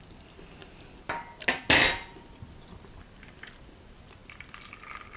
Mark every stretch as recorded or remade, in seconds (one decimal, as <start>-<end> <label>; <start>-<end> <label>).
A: 0.0-4.2 recorded; 4.2-5.2 remade